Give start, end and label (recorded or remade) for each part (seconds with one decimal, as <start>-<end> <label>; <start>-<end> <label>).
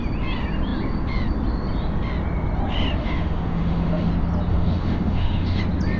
0.0-3.0 recorded; 3.0-4.1 remade; 4.1-4.5 recorded; 4.5-5.6 remade; 5.6-6.0 recorded